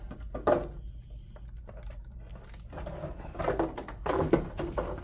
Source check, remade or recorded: recorded